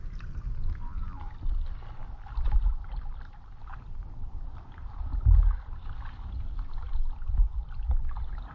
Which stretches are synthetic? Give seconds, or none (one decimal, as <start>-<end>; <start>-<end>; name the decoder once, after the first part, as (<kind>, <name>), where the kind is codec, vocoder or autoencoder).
none